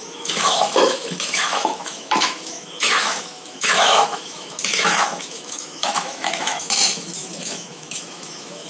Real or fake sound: fake